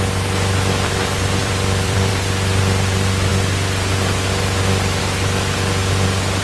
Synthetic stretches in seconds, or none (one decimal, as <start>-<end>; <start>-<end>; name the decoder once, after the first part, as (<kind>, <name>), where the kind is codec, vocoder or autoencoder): 1.4-2.1 (vocoder, BigVGAN v2)